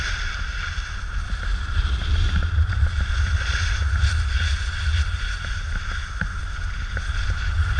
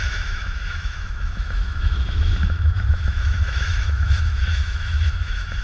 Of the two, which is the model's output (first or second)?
second